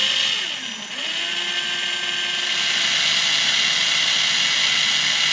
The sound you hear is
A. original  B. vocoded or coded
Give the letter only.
A